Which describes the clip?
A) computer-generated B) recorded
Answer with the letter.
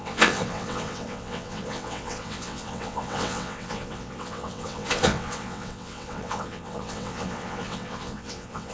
A